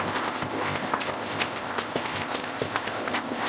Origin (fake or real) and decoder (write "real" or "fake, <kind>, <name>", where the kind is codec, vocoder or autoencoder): fake, codec, ZipCodec